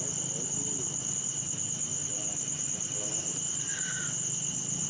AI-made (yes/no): no